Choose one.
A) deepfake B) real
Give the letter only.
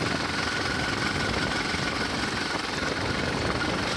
B